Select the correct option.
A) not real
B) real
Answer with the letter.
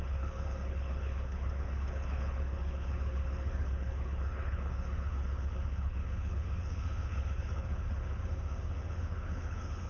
A